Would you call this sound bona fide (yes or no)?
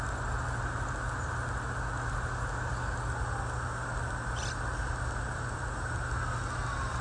yes